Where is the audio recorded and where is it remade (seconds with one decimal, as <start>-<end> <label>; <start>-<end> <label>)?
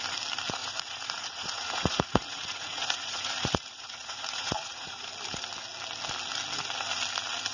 0.0-0.6 recorded; 0.6-5.1 remade; 5.1-7.5 recorded